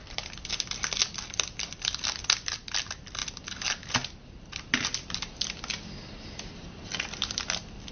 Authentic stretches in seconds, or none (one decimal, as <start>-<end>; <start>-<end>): 0.0-7.9